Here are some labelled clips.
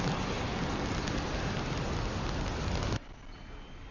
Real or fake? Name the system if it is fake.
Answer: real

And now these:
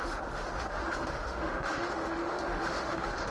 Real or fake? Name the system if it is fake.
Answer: fake, autoencoder, DAC-VAE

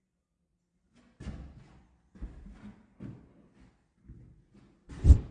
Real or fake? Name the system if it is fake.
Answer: real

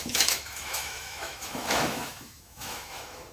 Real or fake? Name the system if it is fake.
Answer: fake, autoencoder, DAC-VAE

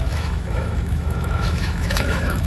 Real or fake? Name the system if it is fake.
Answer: fake, autoencoder, DAC-VAE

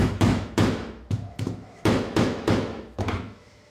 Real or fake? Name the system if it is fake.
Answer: fake, autoencoder, DAC-VAE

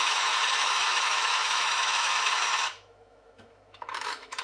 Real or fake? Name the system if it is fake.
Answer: fake, autoencoder, DAC-VAE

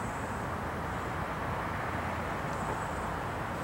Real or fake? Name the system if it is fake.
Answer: real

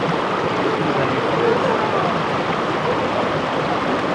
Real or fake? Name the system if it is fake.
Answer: real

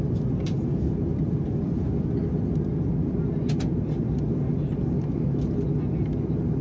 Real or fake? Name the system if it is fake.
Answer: real